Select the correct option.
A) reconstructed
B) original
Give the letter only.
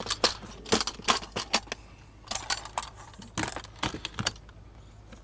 B